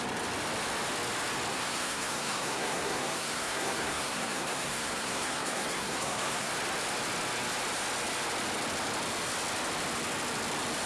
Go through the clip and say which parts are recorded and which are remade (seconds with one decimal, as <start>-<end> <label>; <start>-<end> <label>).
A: 0.0-1.5 recorded; 1.5-6.5 remade; 6.5-10.9 recorded